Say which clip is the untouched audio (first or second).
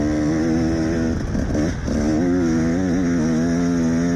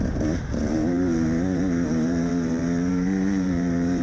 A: first